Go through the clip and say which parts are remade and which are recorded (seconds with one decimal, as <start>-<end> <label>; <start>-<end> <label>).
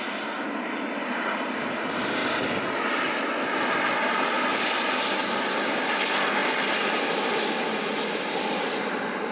0.0-9.3 recorded